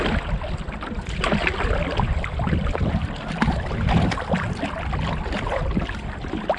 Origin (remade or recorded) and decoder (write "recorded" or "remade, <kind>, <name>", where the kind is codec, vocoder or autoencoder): recorded